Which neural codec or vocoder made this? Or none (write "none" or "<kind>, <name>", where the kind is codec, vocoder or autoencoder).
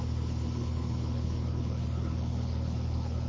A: codec, HILCodec